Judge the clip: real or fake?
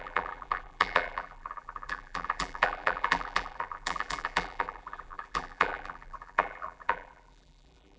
fake